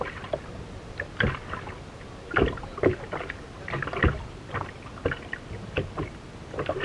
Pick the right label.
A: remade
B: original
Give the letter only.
B